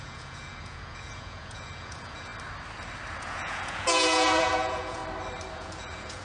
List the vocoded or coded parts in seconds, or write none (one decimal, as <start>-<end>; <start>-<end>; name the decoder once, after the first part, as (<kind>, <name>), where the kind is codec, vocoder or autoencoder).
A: 0.0-2.3 (vocoder, Vocos); 3.1-5.0; 5.5-6.2